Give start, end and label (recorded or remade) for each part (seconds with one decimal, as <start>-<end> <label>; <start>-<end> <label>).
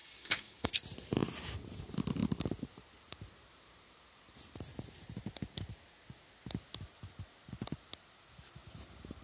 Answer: 0.0-0.7 remade; 0.7-9.2 recorded